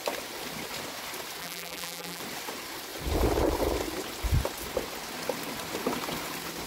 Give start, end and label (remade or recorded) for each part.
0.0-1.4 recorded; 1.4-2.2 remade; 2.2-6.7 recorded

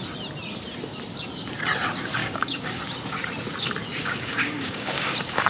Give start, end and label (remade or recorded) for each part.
0.0-2.2 recorded; 2.2-2.8 remade; 2.8-4.0 recorded; 4.0-5.5 remade

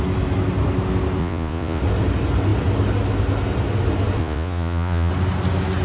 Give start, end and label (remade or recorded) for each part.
0.0-1.2 recorded; 1.2-1.8 remade; 1.8-4.2 recorded; 4.2-5.1 remade; 5.1-5.8 recorded

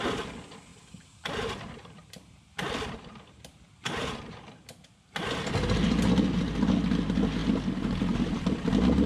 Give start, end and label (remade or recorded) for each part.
0.0-0.7 recorded; 0.7-4.2 remade; 4.2-9.1 recorded

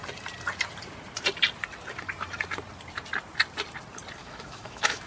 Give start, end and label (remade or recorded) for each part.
0.0-4.2 recorded; 4.2-5.1 remade